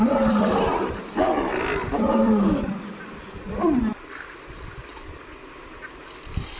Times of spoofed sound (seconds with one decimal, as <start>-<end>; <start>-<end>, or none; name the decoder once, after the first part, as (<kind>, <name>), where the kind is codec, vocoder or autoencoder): 0.0-6.6 (vocoder, BigVGAN v2)